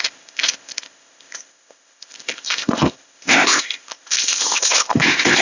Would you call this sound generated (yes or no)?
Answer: yes